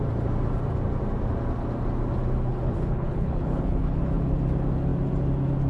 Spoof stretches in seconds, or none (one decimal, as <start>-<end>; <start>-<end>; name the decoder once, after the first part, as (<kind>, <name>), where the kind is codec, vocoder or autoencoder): 2.5-4.0 (codec, HILCodec)